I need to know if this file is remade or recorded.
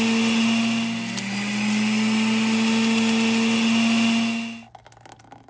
recorded